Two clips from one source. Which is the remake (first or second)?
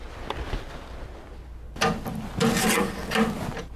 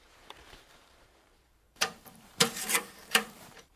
second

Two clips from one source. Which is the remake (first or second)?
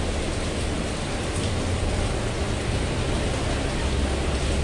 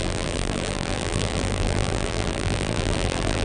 second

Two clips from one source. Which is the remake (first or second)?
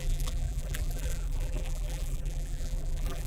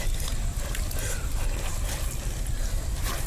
first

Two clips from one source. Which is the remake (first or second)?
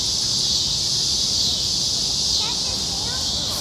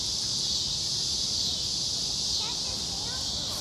second